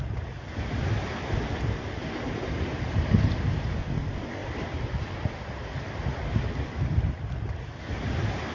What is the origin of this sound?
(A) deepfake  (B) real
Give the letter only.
B